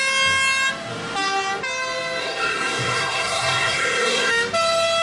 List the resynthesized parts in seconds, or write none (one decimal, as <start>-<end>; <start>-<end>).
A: 2.2-4.3

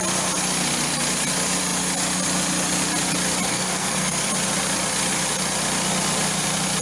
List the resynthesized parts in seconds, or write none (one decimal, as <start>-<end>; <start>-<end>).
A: 3.5-4.3

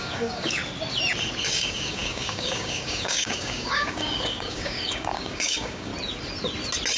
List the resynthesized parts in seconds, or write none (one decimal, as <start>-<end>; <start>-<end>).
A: 0.0-0.6; 1.5-5.9